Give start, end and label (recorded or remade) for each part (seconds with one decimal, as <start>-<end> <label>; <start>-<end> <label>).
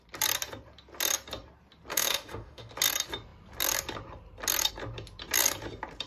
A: 0.0-1.9 recorded; 1.9-2.7 remade; 2.7-6.1 recorded